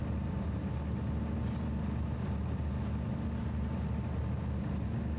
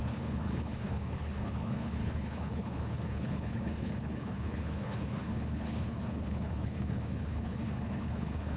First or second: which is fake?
second